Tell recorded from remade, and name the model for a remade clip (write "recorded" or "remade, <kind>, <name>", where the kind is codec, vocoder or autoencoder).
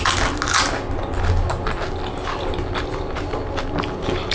recorded